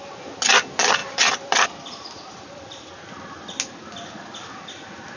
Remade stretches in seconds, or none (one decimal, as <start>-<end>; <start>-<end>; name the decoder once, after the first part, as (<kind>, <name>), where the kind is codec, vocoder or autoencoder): 1.0-2.9 (vocoder, BigVGAN v2)